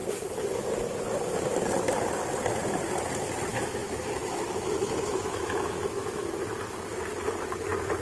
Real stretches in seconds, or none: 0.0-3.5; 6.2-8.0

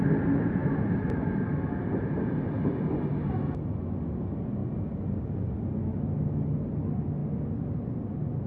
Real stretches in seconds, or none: 0.0-8.5